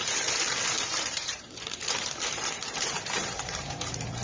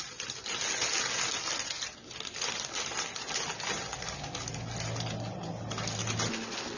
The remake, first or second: first